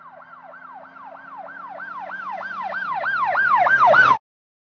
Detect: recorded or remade recorded